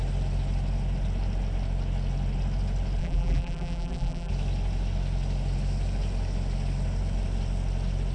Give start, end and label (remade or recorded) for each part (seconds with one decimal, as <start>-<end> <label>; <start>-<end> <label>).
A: 0.0-3.0 recorded; 3.0-4.3 remade; 4.3-8.1 recorded